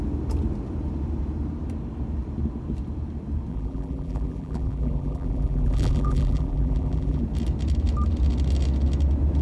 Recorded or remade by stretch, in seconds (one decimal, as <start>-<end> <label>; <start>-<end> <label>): 0.0-3.5 recorded; 3.5-7.2 remade; 7.2-9.4 recorded